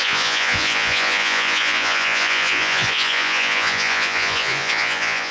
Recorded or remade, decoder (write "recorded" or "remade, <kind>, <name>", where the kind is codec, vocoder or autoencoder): remade, vocoder, Vocos